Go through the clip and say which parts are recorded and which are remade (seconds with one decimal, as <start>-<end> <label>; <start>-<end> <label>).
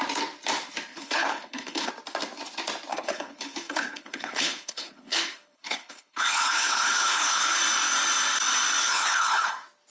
0.0-0.9 recorded; 0.9-1.9 remade; 1.9-2.9 recorded; 2.9-7.6 remade; 7.6-8.8 recorded; 8.8-9.5 remade; 9.5-9.9 recorded